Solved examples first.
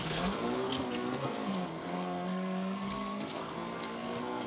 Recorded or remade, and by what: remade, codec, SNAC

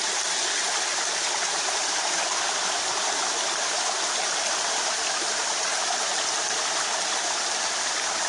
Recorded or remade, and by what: recorded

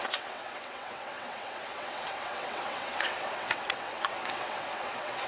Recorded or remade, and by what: remade, vocoder, WaveNeXt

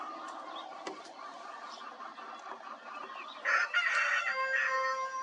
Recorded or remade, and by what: recorded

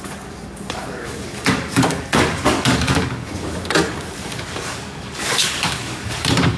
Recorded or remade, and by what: remade, codec, DAC